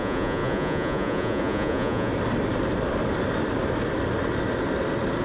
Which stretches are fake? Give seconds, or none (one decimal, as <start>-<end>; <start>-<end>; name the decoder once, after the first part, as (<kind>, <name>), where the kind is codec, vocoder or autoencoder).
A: 0.0-2.1 (vocoder, Vocos)